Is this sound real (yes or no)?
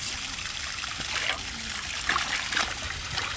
no